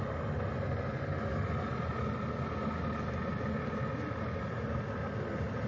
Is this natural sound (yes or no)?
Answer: yes